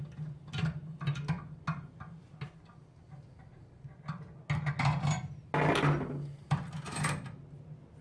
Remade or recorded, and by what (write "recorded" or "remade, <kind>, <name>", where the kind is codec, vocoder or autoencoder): recorded